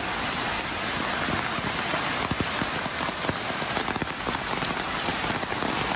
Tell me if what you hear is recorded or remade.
recorded